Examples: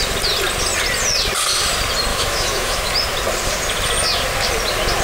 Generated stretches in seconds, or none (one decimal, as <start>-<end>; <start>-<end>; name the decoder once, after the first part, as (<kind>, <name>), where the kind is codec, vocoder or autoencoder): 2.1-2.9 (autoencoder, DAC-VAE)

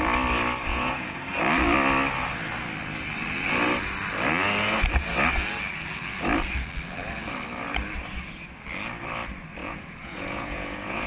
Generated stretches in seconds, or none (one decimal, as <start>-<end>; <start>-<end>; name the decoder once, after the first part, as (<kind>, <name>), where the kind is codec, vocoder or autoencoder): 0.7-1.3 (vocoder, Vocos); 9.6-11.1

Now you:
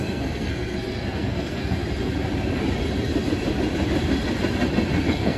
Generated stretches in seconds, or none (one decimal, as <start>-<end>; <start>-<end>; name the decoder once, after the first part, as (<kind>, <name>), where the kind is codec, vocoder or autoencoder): 0.0-1.8 (codec, SNAC); 5.0-5.4

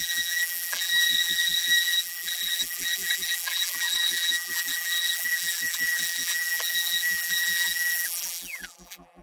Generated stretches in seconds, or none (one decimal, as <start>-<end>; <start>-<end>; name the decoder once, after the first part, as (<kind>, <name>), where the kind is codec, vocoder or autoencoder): 0.0-9.2 (vocoder, BigVGAN v2)

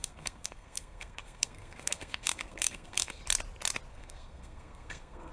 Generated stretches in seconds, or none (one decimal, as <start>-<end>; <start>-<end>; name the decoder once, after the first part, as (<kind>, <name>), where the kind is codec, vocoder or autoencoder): 0.0-3.2 (codec, SNAC); 3.9-5.3

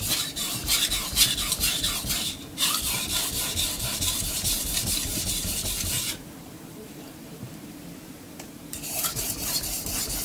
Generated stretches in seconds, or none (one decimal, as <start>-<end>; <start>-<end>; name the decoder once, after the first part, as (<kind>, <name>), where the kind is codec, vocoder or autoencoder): 0.0-0.6 (vocoder, BigVGAN v2); 1.6-10.2

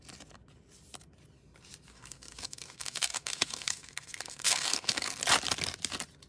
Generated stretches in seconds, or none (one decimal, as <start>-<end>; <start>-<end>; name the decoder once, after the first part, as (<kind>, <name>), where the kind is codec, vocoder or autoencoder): 1.9-5.2 (codec, SNAC)

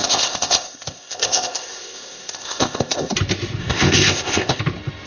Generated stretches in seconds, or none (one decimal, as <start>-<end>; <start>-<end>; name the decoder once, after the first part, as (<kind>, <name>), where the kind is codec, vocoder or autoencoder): 0.0-3.1 (codec, ZipCodec); 3.6-4.6